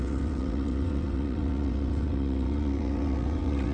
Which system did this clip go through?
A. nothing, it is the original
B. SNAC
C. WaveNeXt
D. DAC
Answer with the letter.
C